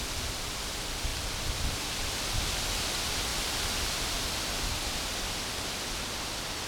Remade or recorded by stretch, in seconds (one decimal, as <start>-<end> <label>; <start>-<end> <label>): 0.0-1.1 recorded; 1.1-2.1 remade; 2.1-6.7 recorded